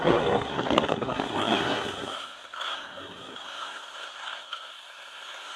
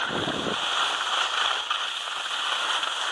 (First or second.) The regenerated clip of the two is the first